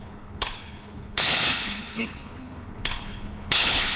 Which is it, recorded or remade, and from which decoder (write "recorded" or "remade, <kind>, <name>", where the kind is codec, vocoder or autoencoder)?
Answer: remade, codec, HILCodec